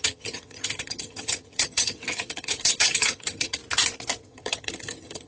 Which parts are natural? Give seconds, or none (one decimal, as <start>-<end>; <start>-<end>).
3.6-4.2